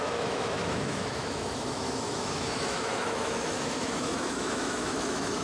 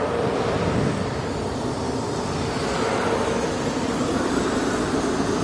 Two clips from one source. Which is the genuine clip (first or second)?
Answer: second